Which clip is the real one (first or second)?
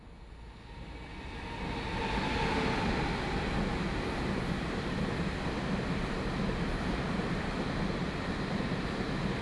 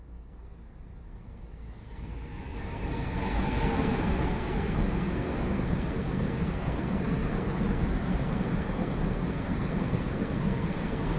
first